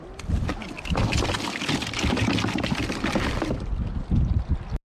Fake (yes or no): no